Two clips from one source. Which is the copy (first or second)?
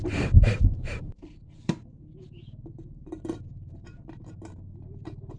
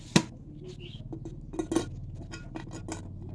first